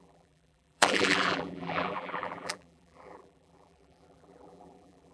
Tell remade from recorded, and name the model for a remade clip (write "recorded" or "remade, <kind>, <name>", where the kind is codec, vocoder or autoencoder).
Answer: remade, vocoder, BigVGAN v2